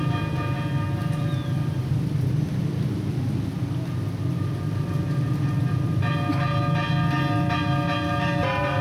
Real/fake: real